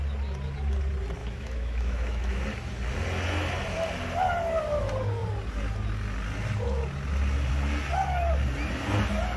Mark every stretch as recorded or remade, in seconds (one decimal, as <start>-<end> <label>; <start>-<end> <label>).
0.0-1.2 recorded; 1.2-2.4 remade; 2.4-9.4 recorded